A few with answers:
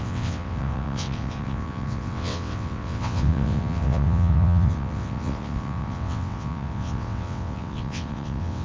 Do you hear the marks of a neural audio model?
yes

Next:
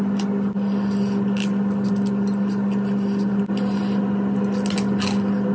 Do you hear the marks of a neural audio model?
no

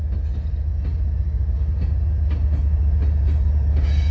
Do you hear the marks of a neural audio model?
no